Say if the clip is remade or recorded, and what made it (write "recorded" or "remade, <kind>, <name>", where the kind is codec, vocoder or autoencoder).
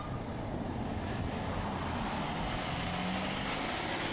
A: recorded